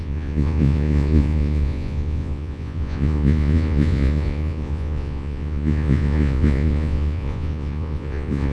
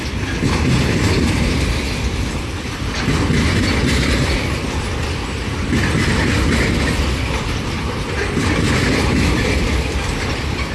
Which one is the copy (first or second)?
first